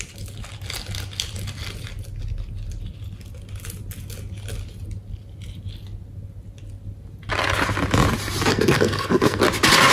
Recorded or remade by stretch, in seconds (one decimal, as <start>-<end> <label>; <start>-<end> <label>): 0.0-8.5 recorded; 8.5-9.4 remade; 9.4-9.9 recorded